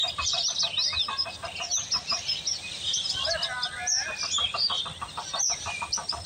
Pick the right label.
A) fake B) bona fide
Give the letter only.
B